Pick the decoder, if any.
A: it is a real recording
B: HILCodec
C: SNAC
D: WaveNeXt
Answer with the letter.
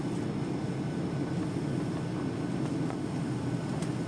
A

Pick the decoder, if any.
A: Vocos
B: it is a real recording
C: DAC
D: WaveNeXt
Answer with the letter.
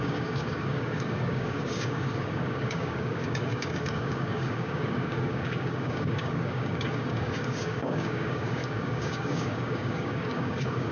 C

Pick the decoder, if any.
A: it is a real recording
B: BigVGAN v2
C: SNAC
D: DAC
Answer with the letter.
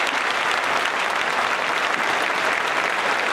A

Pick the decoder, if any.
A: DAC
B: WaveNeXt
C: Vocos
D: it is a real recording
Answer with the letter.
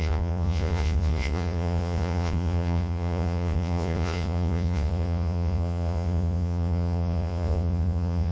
C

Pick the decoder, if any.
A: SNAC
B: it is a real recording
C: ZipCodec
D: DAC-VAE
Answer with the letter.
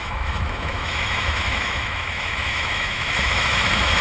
D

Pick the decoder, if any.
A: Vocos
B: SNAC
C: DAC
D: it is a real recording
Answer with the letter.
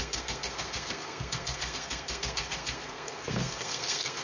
B